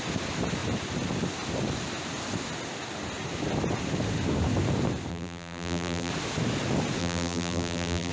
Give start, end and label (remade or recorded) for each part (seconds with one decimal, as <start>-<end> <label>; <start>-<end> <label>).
0.0-5.1 recorded; 5.1-6.1 remade; 6.1-7.0 recorded; 7.0-8.1 remade